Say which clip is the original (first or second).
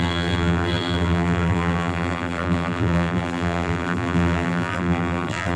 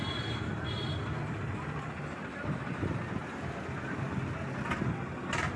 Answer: second